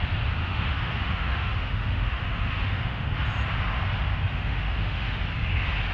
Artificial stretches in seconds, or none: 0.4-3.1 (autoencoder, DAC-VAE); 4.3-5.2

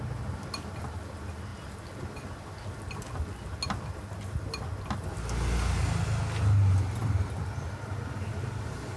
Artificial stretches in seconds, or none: none

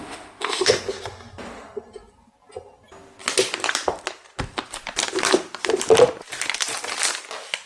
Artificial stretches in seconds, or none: 0.0-0.7 (autoencoder, DAC-VAE)

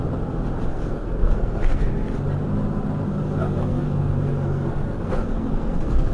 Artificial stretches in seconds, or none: 0.7-1.8 (codec, SNAC); 3.4-6.1